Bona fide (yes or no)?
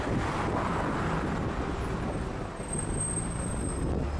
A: yes